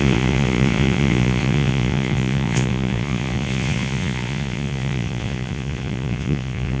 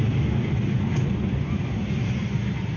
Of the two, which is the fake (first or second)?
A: first